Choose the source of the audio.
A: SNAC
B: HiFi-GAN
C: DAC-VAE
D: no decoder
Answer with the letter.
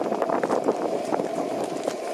D